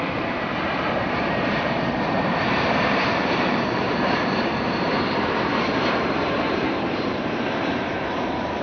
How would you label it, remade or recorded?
remade